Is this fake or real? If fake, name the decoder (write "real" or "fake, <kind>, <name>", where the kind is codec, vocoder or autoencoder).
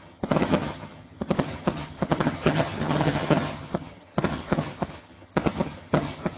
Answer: fake, vocoder, HiFi-GAN